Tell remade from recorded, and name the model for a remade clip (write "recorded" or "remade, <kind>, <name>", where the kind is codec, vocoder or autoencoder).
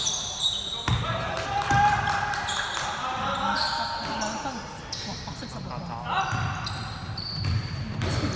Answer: recorded